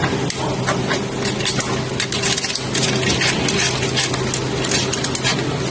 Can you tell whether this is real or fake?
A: real